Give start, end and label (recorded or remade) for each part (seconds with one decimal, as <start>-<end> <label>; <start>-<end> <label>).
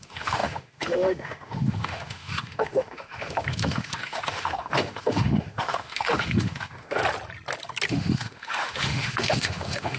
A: 0.0-7.0 remade; 7.0-7.9 recorded; 7.9-10.0 remade